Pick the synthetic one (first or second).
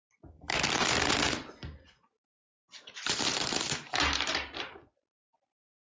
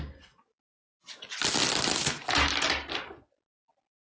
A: first